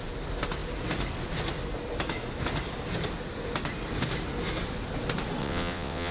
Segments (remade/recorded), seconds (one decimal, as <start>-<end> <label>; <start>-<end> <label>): 0.0-5.4 recorded; 5.4-6.1 remade

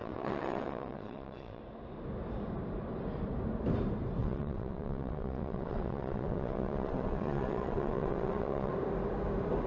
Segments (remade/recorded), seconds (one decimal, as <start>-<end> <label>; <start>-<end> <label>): 0.0-1.6 remade; 1.6-4.2 recorded; 4.2-8.7 remade; 8.7-9.7 recorded